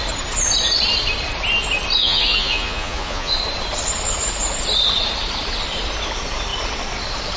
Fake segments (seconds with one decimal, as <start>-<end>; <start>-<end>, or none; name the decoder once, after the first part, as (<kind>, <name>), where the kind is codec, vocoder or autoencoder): 2.0-3.3 (vocoder, Vocos)

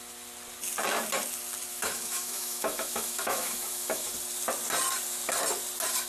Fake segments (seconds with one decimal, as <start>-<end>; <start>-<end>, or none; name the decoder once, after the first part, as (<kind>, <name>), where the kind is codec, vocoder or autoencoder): 1.7-4.1 (autoencoder, DAC-VAE)